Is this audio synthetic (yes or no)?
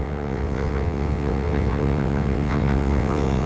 yes